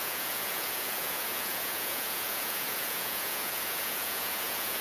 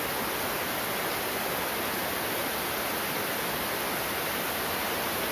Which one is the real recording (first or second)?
second